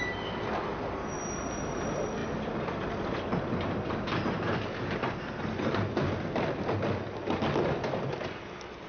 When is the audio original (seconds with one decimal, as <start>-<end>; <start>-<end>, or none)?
0.0-8.9